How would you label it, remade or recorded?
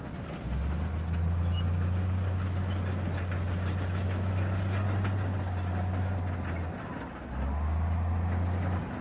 recorded